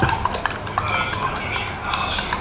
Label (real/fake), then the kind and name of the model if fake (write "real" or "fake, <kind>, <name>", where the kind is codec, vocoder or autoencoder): real